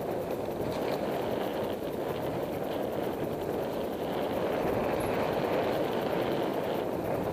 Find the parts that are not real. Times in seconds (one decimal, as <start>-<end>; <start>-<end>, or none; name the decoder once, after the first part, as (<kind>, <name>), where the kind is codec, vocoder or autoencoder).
none